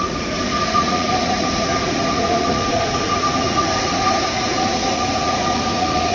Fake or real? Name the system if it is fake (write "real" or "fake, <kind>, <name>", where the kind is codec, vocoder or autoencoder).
fake, vocoder, Vocos